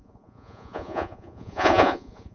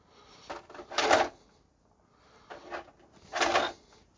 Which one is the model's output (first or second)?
first